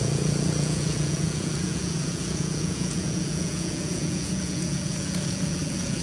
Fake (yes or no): yes